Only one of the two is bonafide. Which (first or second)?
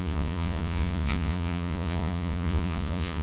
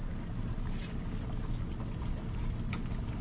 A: second